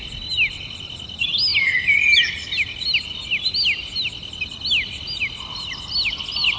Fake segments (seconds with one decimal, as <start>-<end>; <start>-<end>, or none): none